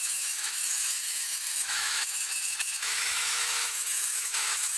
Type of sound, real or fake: fake